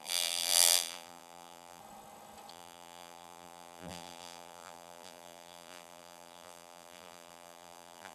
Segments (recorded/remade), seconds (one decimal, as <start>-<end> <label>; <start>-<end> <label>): 0.0-1.8 remade; 1.8-2.5 recorded; 2.5-8.1 remade